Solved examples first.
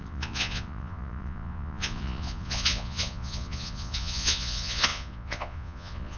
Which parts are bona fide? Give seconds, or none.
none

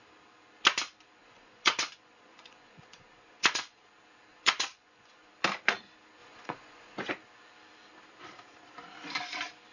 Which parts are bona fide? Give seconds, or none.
0.0-1.2; 3.8-4.3; 5.3-6.2; 7.1-9.7

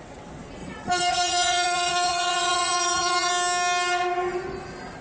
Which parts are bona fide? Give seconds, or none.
0.0-0.6; 3.3-5.0

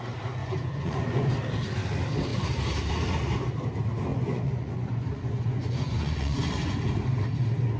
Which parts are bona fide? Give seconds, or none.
0.0-0.4; 1.3-4.1; 6.7-7.8